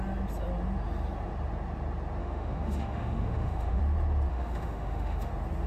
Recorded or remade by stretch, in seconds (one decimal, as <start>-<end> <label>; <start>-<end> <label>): 0.0-2.2 recorded; 2.2-3.8 remade; 3.8-4.3 recorded; 4.3-5.3 remade; 5.3-5.7 recorded